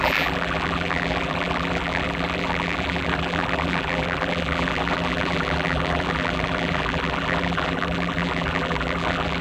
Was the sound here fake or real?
fake